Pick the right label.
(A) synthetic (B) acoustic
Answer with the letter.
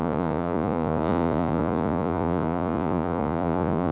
A